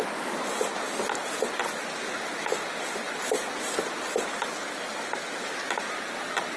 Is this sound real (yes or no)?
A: yes